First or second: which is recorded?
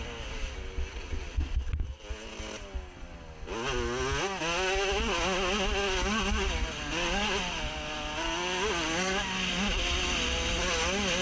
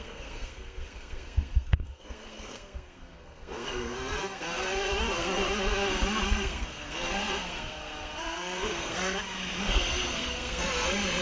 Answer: first